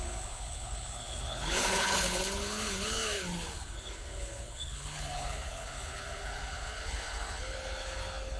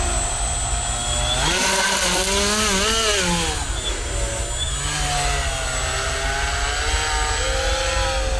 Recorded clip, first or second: second